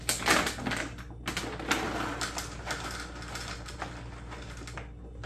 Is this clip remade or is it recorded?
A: recorded